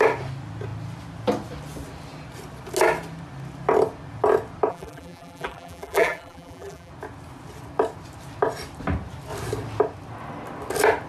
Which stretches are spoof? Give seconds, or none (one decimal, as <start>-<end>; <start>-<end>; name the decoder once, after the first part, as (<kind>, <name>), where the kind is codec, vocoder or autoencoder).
4.7-6.9 (vocoder, BigVGAN v2)